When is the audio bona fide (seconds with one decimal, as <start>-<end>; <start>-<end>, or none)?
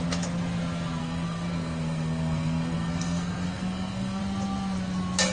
0.0-1.0; 4.2-5.3